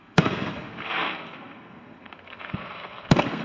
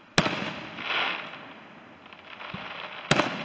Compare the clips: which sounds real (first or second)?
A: second